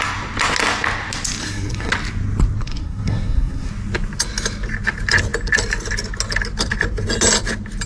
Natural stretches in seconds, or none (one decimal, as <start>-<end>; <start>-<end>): 0.0-1.4; 1.9-2.6; 3.7-7.9